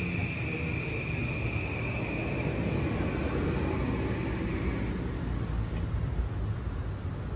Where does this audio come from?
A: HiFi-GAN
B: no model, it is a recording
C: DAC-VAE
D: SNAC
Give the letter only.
B